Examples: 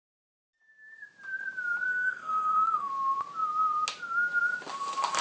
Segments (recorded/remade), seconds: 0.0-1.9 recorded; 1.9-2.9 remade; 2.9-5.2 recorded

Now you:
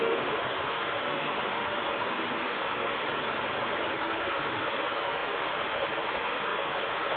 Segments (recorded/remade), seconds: 0.0-3.0 remade; 3.0-4.0 recorded; 4.0-7.2 remade